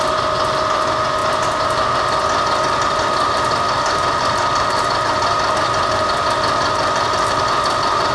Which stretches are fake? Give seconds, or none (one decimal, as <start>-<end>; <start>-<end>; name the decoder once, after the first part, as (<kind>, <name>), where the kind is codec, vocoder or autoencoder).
none